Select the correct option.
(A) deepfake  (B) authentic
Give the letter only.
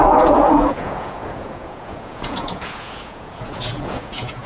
A